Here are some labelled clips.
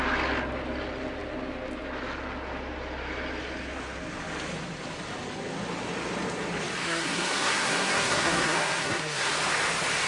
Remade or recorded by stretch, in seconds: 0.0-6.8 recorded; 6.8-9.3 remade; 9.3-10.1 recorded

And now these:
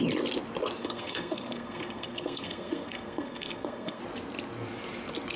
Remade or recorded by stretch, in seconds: 0.0-0.8 recorded; 0.8-4.0 remade; 4.0-5.4 recorded

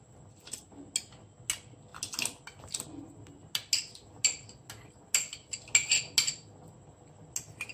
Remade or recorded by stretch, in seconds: 0.0-7.7 recorded

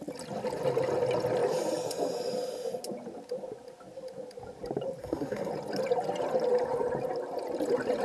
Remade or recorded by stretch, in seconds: 0.0-5.0 recorded; 5.0-5.5 remade; 5.5-8.0 recorded

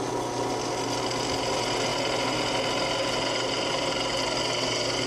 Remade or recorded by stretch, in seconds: 0.0-5.1 recorded

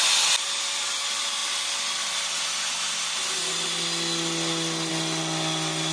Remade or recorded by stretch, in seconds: 0.0-5.9 recorded